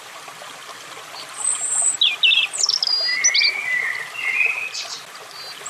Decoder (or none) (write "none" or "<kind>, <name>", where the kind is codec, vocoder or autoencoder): none